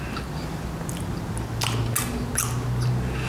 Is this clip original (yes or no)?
yes